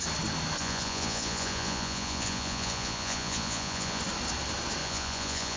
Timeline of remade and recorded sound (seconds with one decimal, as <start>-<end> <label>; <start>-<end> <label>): 0.0-0.6 recorded; 0.6-4.0 remade; 4.0-4.8 recorded; 4.8-5.6 remade